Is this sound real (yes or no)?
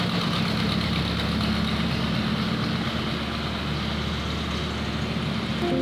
yes